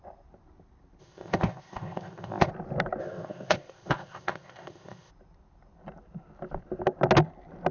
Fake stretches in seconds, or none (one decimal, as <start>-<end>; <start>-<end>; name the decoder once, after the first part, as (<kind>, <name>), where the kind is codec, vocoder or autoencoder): 1.0-2.5 (codec, ZipCodec); 3.0-5.1